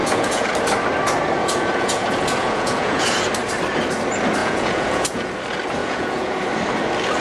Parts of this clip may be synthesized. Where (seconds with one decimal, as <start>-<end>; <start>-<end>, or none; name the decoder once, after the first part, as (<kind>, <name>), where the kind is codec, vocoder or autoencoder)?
0.0-0.5 (vocoder, Vocos); 1.4-3.2; 4.4-5.3; 5.8-6.4